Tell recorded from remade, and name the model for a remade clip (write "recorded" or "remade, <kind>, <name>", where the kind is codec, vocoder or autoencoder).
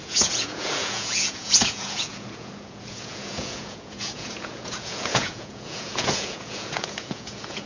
remade, vocoder, Vocos